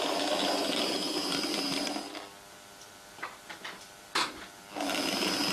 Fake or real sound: real